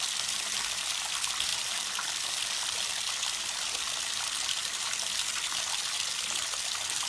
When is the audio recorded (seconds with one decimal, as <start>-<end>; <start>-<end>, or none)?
0.0-7.1